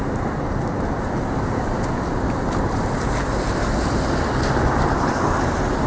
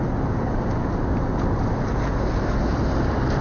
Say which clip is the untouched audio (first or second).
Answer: second